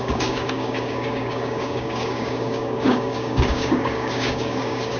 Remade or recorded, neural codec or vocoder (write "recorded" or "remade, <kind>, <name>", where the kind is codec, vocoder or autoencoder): remade, codec, DAC